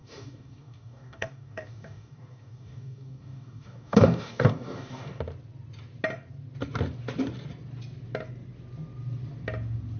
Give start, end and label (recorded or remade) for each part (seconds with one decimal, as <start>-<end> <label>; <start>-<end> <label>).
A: 0.0-5.2 remade; 5.2-10.0 recorded